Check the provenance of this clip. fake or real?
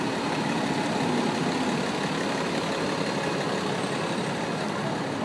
real